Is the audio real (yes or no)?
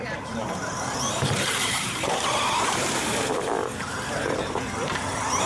no